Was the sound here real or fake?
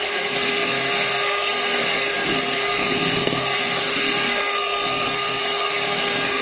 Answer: fake